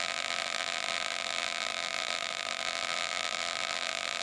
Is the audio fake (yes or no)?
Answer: yes